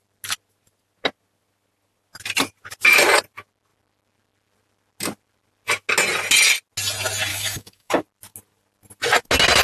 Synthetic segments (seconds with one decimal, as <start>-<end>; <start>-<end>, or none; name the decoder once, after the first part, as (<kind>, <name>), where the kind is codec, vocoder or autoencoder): 7.3-8.0 (codec, DAC)